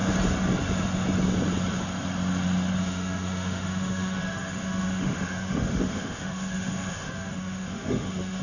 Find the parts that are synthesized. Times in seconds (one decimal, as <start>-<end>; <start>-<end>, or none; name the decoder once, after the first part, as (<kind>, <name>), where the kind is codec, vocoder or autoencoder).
2.8-8.4 (autoencoder, DAC-VAE)